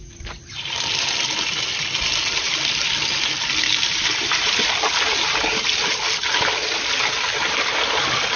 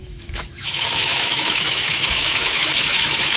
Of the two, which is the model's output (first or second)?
second